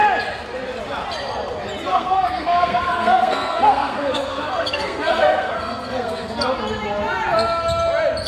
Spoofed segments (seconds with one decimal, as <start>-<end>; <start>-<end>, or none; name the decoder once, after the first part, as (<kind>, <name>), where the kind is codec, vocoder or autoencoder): 1.9-6.3 (codec, SNAC)